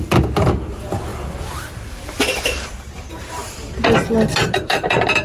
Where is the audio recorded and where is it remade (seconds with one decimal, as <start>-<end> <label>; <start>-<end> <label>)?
0.0-3.4 remade; 3.4-4.6 recorded; 4.6-5.2 remade